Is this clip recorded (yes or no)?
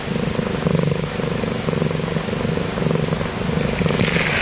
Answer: yes